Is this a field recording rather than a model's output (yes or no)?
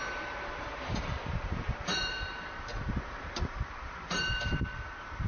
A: no